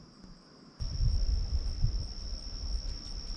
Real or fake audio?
real